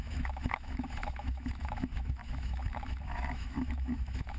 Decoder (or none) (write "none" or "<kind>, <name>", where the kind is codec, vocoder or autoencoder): autoencoder, DAC-VAE